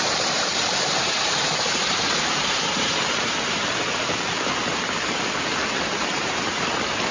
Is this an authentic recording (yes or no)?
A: no